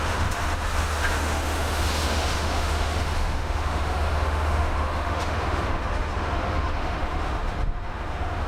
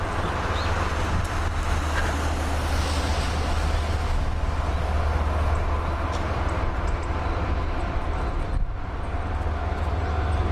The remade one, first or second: first